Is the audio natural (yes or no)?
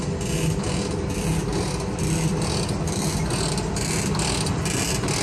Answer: yes